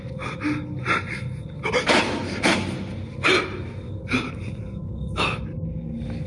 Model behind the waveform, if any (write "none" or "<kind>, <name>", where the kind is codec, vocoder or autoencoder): none